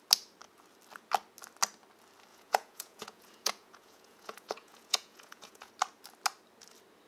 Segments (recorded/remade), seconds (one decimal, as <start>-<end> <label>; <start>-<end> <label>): 0.0-2.3 recorded; 2.3-5.7 remade; 5.7-7.1 recorded